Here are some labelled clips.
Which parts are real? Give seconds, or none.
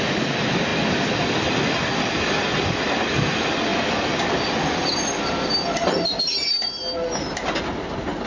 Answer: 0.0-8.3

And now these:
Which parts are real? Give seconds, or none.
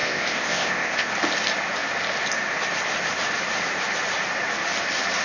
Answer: 1.1-5.2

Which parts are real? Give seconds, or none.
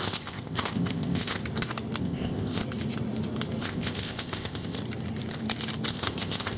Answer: 1.4-2.0; 2.6-3.6; 4.8-5.9